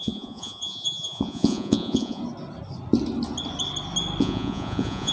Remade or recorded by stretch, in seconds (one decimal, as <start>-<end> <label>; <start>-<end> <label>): 0.0-2.2 remade; 2.2-4.2 recorded; 4.2-5.1 remade